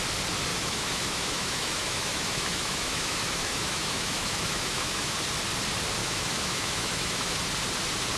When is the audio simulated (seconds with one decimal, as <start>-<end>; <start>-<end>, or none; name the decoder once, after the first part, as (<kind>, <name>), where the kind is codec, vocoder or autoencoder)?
0.5-5.2 (autoencoder, DAC-VAE); 6.0-7.4